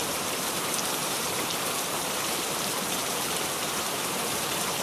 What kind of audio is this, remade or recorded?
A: remade